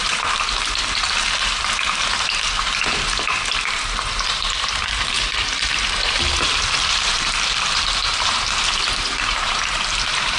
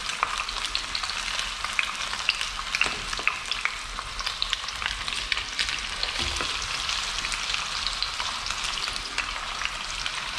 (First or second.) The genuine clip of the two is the second